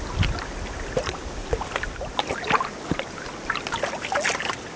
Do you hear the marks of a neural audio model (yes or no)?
no